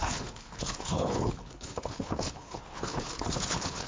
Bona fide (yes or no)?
no